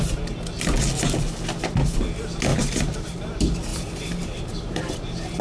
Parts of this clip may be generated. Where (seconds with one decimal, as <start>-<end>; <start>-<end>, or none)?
2.5-3.2; 3.7-4.8